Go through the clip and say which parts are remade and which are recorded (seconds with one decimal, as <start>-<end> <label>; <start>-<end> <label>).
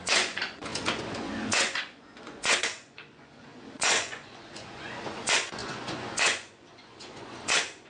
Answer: 0.0-7.9 remade